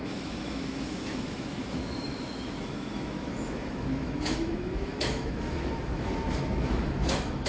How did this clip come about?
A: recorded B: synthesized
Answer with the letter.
B